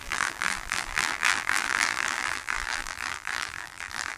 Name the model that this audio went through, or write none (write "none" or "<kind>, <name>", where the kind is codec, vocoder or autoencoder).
vocoder, BigVGAN v2